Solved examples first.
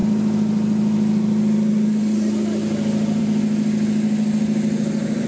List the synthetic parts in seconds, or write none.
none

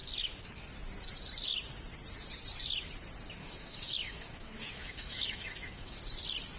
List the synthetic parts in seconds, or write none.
3.4-6.0 (autoencoder, DAC-VAE)

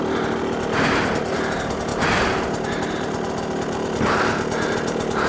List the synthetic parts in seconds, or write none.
none

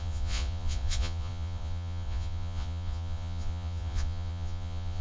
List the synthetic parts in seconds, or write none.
0.0-5.0 (vocoder, Vocos)

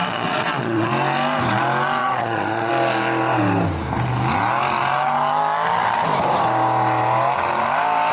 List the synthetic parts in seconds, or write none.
0.0-0.9 (vocoder, Vocos); 2.0-2.7